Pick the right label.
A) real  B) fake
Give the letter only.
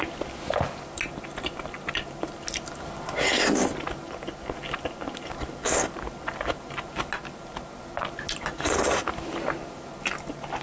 A